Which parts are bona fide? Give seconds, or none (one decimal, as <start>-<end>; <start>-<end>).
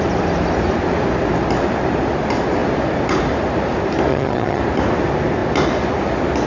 0.0-4.1; 4.6-6.5